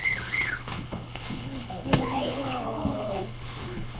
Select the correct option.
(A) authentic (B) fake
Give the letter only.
B